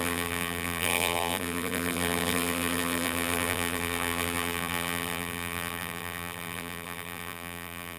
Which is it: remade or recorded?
remade